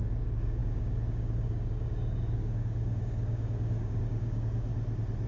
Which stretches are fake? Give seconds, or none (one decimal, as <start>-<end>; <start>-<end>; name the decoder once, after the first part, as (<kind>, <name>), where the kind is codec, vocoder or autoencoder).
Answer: 0.0-4.7 (codec, DAC)